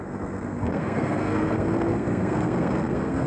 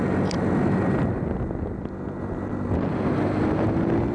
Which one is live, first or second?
second